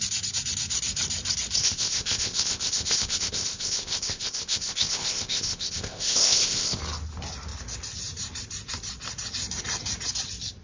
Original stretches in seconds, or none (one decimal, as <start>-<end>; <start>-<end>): 0.0-1.6; 6.8-10.6